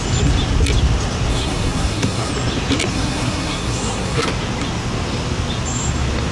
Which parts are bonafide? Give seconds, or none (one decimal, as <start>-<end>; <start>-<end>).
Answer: 0.0-1.3; 2.3-2.9; 4.3-6.3